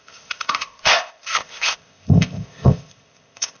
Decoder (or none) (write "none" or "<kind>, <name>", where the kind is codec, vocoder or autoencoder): codec, ZipCodec